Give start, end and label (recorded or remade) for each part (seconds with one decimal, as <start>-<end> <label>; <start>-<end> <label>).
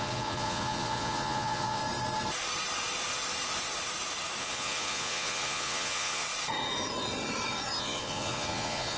0.0-1.8 remade; 1.8-4.4 recorded; 4.4-6.2 remade; 6.2-7.8 recorded; 7.8-9.0 remade